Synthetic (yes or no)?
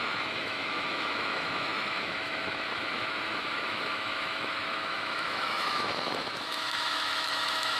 yes